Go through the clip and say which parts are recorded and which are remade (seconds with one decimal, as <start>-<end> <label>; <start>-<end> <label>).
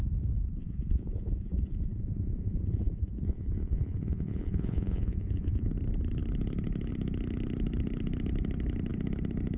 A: 0.0-0.6 recorded; 0.6-5.7 remade; 5.7-9.6 recorded